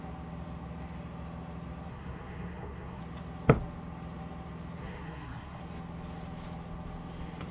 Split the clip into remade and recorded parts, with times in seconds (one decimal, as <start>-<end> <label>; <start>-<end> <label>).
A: 0.0-1.9 recorded; 1.9-3.0 remade; 3.0-4.8 recorded; 4.8-5.6 remade; 5.6-7.5 recorded